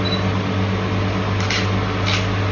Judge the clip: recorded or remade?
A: recorded